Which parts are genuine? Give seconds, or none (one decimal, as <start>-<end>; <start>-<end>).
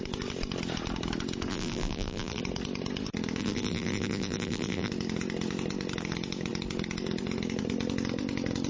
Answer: 0.0-1.5; 2.4-3.4; 4.9-8.7